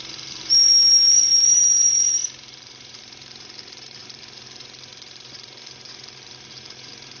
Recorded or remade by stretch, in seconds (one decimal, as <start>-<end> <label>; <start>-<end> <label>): 0.0-7.2 remade